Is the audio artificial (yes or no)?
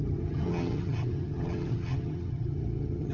yes